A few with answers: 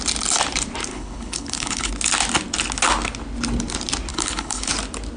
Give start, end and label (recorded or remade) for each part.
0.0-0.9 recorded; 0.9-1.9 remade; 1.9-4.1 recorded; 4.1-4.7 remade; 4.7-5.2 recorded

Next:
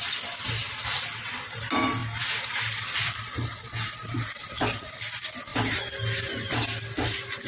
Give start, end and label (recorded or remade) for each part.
0.0-7.5 recorded